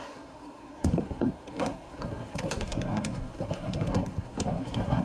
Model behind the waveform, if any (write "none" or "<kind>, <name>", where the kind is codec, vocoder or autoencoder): codec, SNAC